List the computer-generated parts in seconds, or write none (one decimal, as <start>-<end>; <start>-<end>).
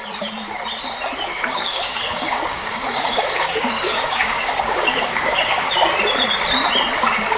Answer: 1.3-5.7